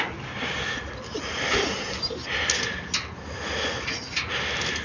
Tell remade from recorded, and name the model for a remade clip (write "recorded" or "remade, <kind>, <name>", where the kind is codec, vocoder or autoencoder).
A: recorded